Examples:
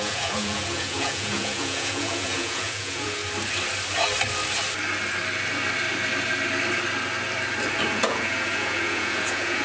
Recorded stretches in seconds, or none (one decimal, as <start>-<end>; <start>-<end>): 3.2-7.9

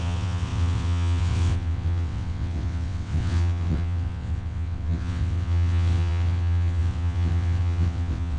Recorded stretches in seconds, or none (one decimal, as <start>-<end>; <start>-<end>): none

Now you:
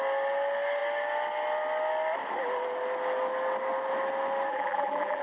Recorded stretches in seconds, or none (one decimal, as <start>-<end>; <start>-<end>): 0.0-4.5

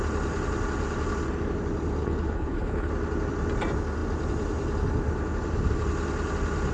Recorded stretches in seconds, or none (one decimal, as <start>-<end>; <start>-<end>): 0.0-2.0; 2.9-6.7